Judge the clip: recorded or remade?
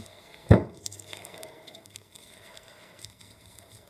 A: remade